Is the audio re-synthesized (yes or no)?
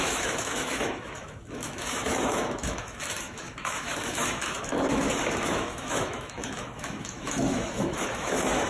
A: yes